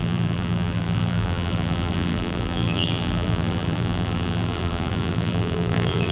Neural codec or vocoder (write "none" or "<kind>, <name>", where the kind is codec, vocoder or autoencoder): vocoder, BigVGAN v2